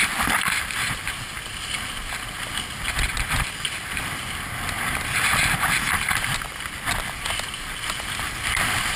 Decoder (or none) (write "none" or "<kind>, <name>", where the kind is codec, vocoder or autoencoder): none